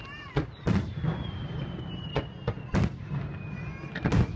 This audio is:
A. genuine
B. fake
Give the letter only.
A